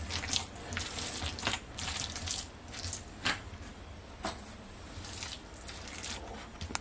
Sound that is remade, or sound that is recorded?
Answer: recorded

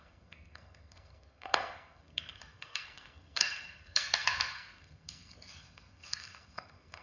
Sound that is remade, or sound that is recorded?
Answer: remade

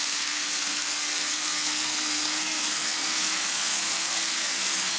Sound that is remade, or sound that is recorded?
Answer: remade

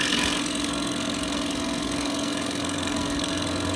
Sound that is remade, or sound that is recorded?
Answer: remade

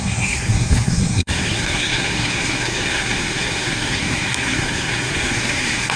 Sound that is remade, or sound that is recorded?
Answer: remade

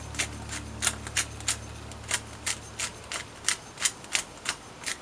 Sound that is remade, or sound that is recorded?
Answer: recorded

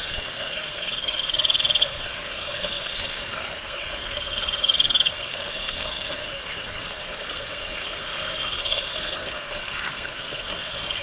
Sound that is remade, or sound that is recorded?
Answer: remade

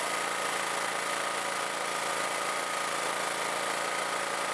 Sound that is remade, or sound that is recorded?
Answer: recorded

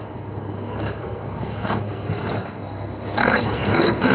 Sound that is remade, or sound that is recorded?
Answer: remade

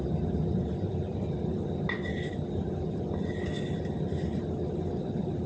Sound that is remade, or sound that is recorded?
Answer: recorded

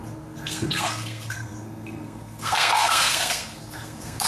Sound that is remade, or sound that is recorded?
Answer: remade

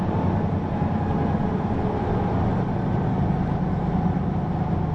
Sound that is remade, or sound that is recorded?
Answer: recorded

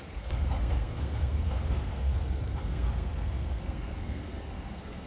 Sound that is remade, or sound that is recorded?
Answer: remade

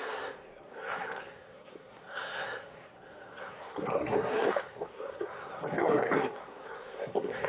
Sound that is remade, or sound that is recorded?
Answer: remade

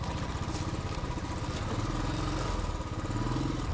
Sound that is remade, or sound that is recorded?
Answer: recorded